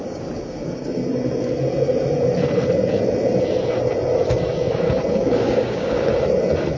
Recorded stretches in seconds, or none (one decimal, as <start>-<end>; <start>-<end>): 1.0-5.1; 6.1-6.8